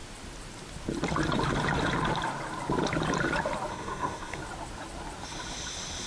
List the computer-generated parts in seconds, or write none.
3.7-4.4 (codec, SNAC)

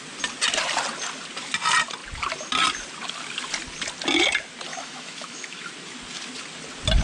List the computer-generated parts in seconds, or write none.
4.7-5.7 (autoencoder, DAC-VAE)

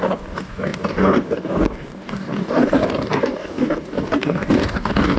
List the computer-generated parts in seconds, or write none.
0.0-5.2 (codec, DAC)

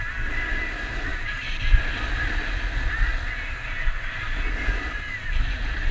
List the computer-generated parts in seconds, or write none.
none

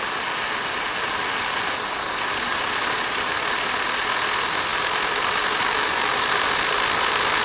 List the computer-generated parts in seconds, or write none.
none

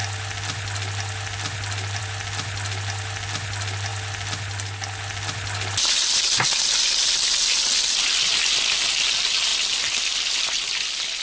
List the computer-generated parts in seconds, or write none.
none

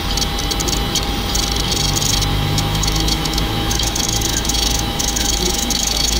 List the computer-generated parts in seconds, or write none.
2.3-6.2 (autoencoder, DAC-VAE)